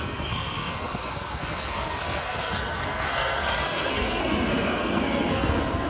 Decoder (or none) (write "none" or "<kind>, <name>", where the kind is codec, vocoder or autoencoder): codec, SNAC